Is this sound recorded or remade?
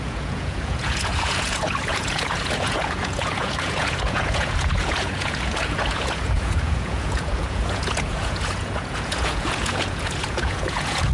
remade